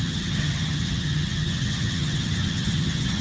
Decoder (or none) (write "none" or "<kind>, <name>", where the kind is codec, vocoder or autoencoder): vocoder, HiFi-GAN